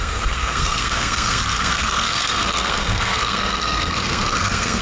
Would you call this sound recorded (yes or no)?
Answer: no